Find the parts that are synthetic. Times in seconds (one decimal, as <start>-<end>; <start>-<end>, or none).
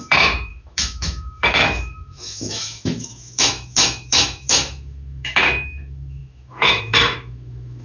0.0-7.8